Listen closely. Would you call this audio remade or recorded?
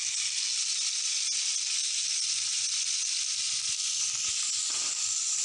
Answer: recorded